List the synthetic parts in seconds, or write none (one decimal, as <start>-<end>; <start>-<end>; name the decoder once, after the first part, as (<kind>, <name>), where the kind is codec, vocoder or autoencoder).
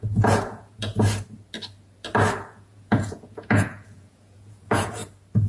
0.0-0.9 (vocoder, Vocos); 2.5-5.0